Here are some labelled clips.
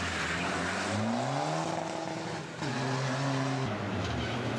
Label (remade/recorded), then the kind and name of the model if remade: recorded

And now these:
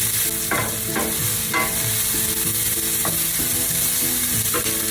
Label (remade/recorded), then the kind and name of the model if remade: recorded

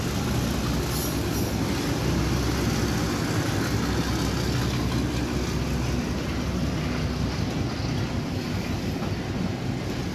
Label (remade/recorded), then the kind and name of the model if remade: recorded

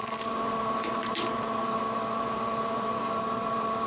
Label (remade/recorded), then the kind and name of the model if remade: remade, vocoder, BigVGAN v2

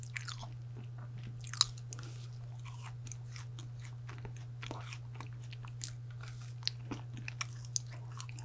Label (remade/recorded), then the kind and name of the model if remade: recorded